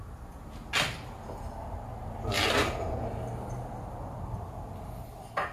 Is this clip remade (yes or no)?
no